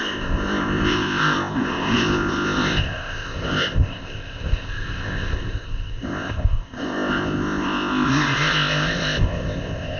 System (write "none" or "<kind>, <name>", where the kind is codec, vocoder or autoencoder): codec, ZipCodec